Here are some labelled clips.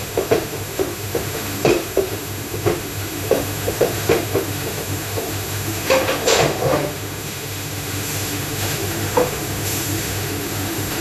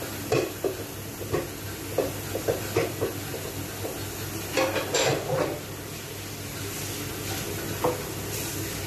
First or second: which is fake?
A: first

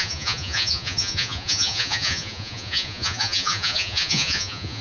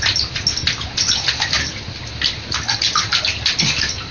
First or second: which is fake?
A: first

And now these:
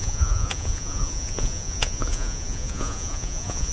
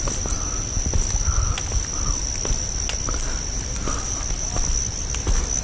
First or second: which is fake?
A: first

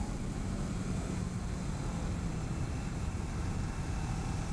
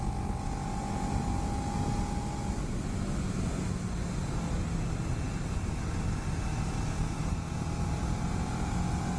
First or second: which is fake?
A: first